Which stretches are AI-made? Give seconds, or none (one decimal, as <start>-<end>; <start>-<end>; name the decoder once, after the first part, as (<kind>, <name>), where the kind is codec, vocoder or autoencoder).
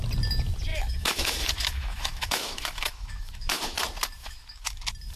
0.7-3.8 (autoencoder, DAC-VAE); 4.2-4.8